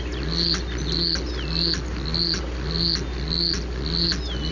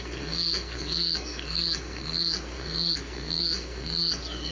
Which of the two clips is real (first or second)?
first